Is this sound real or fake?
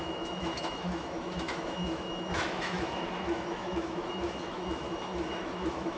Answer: fake